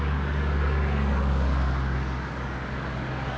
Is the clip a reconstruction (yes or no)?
yes